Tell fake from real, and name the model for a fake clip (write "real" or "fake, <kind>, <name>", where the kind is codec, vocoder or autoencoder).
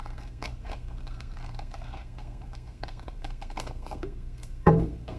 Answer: fake, codec, SNAC